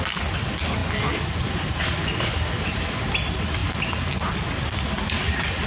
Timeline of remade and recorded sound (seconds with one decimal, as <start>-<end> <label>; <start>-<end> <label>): 0.0-5.7 recorded

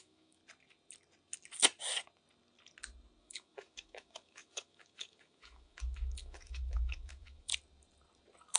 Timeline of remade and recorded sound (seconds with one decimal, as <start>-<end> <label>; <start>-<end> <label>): 0.0-0.4 remade; 0.4-3.2 recorded; 3.2-7.5 remade; 7.5-8.6 recorded

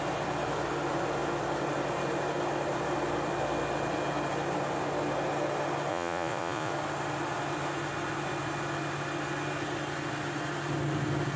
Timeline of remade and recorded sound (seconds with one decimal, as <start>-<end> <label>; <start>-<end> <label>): 0.0-5.9 recorded; 5.9-6.7 remade; 6.7-11.4 recorded

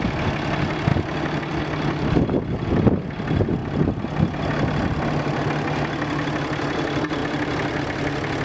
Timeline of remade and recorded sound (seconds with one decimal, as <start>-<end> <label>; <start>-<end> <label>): 0.0-8.4 recorded

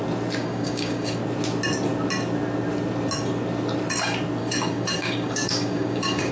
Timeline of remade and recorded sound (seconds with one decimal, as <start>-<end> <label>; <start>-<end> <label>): 0.0-0.4 recorded; 0.4-1.2 remade; 1.2-4.4 recorded; 4.4-6.3 remade

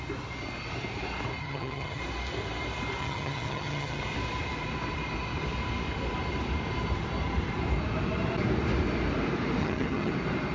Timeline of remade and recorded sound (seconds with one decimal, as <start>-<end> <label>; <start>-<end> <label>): 0.0-1.4 recorded; 1.4-2.0 remade; 2.0-3.0 recorded; 3.0-4.0 remade; 4.0-9.6 recorded; 9.6-10.1 remade; 10.1-10.5 recorded

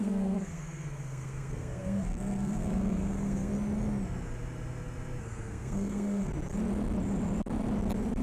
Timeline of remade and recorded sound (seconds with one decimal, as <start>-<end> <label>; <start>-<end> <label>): 0.0-3.5 remade; 3.5-5.2 recorded; 5.2-6.3 remade; 6.3-8.2 recorded

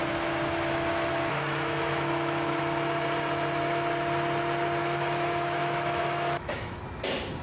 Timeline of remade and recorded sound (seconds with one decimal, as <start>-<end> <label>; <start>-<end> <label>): 0.0-1.1 recorded; 1.1-2.6 remade; 2.6-4.8 recorded; 4.8-6.8 remade; 6.8-7.4 recorded